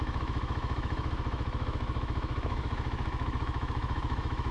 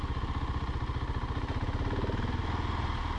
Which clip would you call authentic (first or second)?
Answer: second